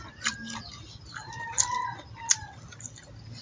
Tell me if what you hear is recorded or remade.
recorded